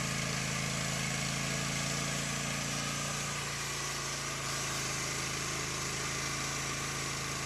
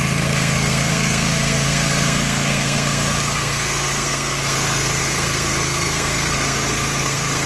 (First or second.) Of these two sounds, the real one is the first